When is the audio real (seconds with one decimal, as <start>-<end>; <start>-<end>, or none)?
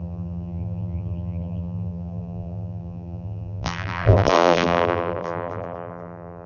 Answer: none